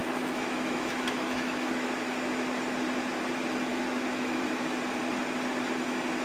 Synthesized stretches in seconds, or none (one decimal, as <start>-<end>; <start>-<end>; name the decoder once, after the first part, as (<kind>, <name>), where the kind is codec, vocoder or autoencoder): 0.0-2.2 (autoencoder, DAC-VAE); 3.7-4.4